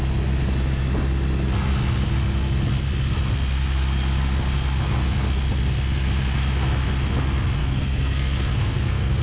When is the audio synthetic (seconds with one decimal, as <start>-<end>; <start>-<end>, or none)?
7.6-9.2